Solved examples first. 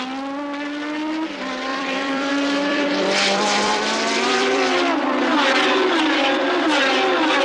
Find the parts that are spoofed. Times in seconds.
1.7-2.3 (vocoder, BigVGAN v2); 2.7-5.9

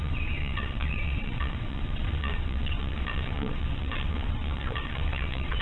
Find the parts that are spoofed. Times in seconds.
0.0-5.6 (vocoder, WaveNeXt)

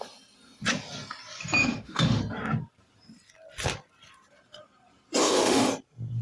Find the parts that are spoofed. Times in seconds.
1.6-2.2 (autoencoder, DAC-VAE); 5.2-5.7

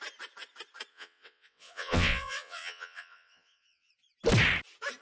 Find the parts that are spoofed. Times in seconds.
0.9-3.9 (vocoder, WaveNeXt)

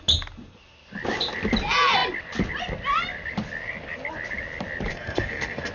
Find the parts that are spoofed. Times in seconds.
4.9-5.7 (codec, SNAC)

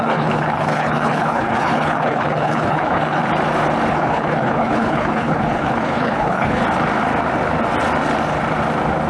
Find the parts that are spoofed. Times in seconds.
0.0-3.2 (codec, HILCodec); 3.9-6.6